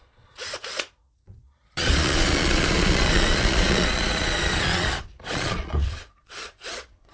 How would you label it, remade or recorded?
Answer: remade